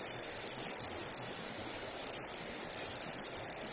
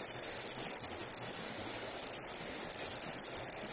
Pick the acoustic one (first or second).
second